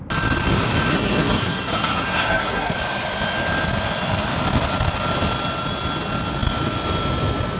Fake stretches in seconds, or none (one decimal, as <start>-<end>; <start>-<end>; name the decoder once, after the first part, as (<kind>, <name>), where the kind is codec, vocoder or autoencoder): 0.9-2.7 (codec, SNAC)